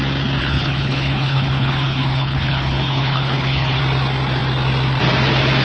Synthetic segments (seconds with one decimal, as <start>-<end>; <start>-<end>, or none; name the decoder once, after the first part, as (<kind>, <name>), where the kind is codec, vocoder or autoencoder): 0.4-3.8 (codec, HILCodec)